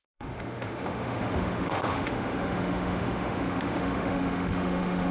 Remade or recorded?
remade